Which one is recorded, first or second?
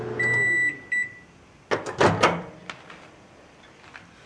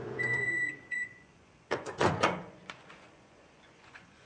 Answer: first